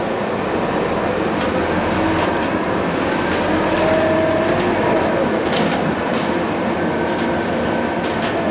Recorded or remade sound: recorded